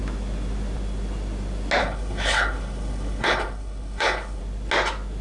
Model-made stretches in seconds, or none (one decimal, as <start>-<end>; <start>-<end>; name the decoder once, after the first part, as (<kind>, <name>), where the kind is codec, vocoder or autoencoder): 1.8-4.4 (codec, HILCodec)

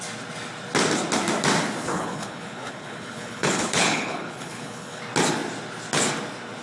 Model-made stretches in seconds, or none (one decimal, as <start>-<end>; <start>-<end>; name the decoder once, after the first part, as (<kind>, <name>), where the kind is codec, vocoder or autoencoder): 1.9-5.0 (codec, HILCodec)

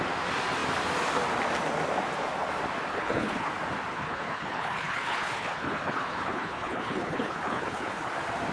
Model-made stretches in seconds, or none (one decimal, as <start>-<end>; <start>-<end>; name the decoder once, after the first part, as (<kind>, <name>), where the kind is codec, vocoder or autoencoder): 2.9-3.5 (codec, HILCodec); 3.9-8.1